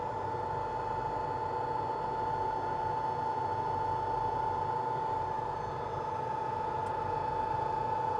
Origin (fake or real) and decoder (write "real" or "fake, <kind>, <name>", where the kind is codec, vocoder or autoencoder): real